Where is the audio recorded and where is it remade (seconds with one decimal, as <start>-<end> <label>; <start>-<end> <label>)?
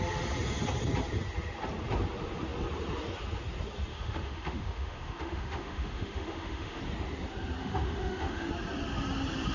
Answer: 0.0-3.9 recorded; 3.9-6.8 remade; 6.8-7.6 recorded; 7.6-8.5 remade; 8.5-9.5 recorded